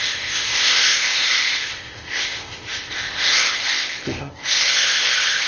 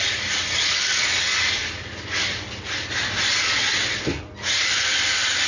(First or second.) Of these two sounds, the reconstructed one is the first